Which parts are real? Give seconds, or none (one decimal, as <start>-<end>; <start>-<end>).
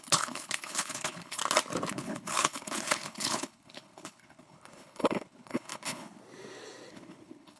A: 1.4-1.9; 6.2-6.9